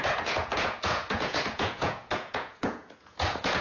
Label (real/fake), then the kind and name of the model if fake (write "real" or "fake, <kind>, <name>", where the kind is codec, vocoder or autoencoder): fake, vocoder, Vocos